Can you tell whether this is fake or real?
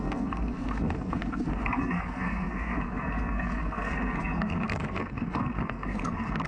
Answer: fake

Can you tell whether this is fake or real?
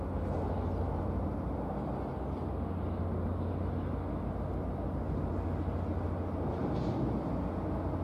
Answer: real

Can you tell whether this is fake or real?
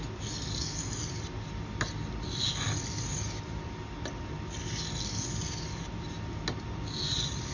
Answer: real